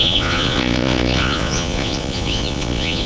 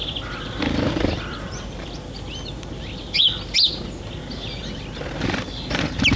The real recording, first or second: second